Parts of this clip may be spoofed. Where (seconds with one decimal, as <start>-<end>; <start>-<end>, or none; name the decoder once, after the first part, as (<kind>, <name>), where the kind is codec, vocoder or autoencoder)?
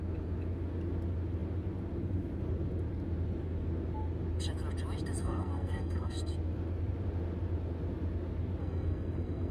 5.2-6.3 (codec, SNAC); 8.6-9.5